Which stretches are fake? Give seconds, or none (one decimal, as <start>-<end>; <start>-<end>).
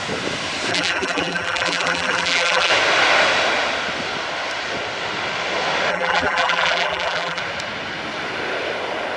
0.7-2.7; 5.9-7.4